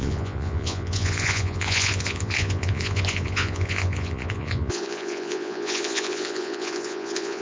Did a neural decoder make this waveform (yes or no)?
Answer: yes